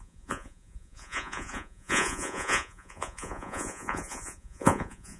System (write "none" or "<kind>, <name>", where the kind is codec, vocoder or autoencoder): vocoder, Vocos